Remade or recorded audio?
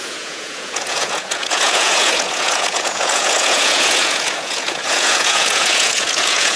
remade